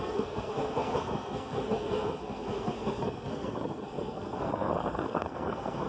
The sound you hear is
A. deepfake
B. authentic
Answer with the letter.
A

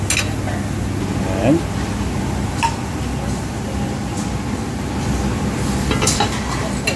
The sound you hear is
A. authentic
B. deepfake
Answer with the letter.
A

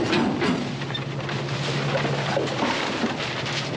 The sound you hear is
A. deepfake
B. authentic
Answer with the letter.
B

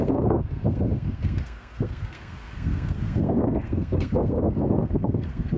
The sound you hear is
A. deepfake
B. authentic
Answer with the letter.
A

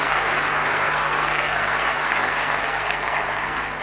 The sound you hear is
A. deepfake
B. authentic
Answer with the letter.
A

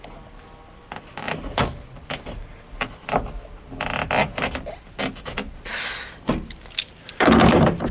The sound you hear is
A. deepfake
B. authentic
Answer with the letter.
B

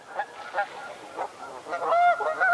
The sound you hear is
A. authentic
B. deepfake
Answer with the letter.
A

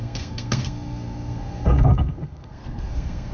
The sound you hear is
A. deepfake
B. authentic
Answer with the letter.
A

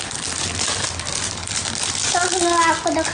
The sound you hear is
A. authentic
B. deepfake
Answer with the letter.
A